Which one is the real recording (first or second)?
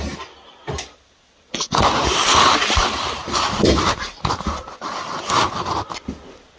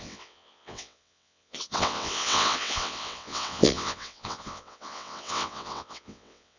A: first